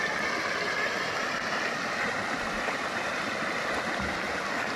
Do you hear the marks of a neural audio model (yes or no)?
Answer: no